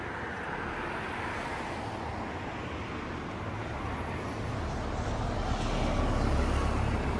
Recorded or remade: recorded